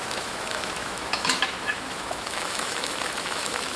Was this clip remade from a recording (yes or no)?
yes